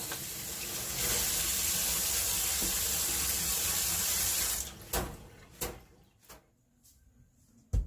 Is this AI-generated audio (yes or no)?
no